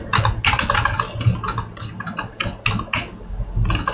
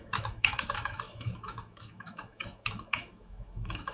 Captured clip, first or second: first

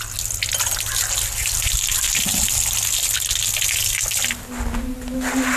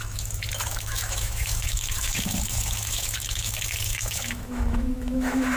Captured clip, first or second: first